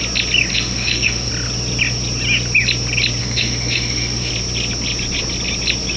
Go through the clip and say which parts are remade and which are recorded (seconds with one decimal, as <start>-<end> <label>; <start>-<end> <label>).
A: 0.0-0.5 recorded; 0.5-1.3 remade; 1.3-3.2 recorded; 3.2-4.3 remade; 4.3-6.0 recorded